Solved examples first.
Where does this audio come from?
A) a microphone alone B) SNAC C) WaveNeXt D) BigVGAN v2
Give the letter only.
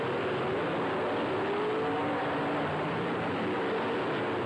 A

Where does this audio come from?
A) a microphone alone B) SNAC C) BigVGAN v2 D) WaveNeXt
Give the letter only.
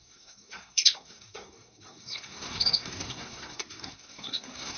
B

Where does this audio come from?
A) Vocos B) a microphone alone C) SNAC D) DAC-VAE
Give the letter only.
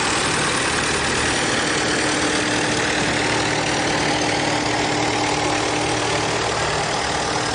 B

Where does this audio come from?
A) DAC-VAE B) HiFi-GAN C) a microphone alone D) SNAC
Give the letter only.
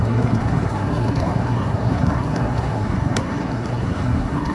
D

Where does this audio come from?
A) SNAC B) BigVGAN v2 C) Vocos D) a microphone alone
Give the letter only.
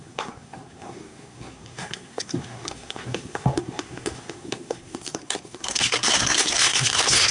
A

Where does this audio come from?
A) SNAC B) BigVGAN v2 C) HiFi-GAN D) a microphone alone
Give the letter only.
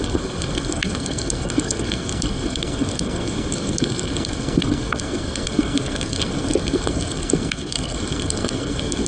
A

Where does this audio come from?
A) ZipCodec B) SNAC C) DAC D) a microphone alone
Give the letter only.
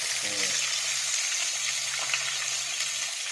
D